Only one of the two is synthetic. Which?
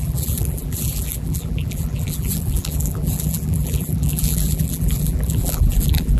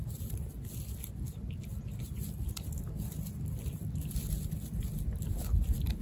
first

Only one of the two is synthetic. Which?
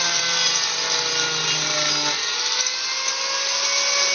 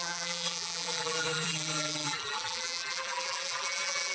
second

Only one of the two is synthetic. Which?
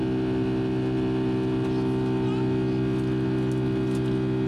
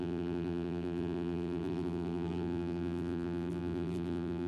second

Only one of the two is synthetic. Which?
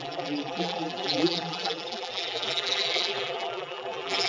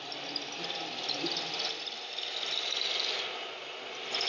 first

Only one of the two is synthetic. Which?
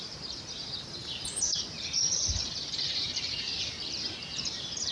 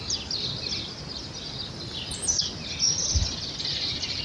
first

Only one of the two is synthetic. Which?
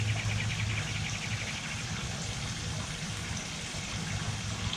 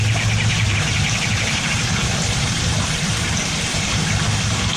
second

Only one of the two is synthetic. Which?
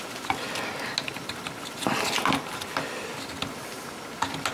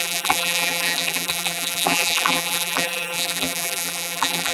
second